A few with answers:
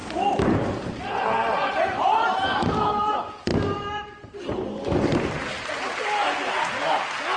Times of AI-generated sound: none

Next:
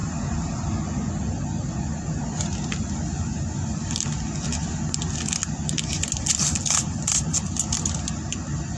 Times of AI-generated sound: 0.0-0.6 (vocoder, BigVGAN v2)

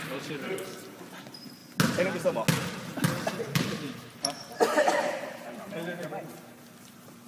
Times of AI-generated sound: 0.0-1.6 (vocoder, BigVGAN v2); 3.4-7.3

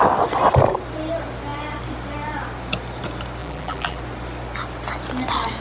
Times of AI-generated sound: 3.4-4.0 (vocoder, BigVGAN v2)

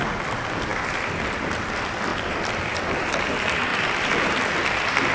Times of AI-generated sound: 2.1-2.7 (vocoder, BigVGAN v2); 3.7-4.4

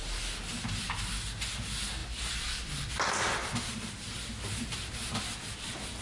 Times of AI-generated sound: 3.4-4.0 (vocoder, BigVGAN v2)

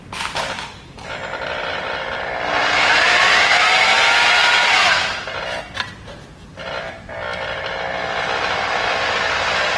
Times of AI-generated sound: none